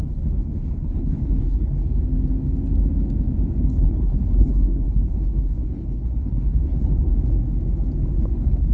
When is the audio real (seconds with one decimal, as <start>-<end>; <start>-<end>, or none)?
1.8-3.6; 7.1-8.2